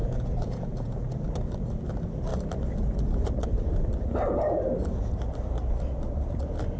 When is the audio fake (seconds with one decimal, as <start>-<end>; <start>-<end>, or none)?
0.0-1.1